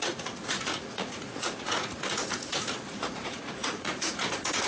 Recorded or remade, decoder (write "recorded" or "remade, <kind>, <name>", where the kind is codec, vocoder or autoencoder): remade, vocoder, Vocos